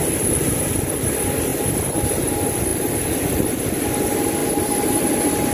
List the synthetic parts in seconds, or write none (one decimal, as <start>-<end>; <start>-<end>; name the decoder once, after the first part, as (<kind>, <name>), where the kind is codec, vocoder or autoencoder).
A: 2.7-3.6 (vocoder, BigVGAN v2); 4.4-5.5